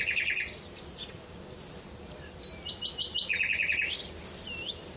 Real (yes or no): yes